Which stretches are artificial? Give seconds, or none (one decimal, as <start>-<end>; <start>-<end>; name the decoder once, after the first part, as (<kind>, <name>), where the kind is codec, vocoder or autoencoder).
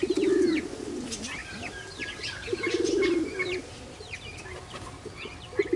1.4-4.9 (vocoder, BigVGAN v2)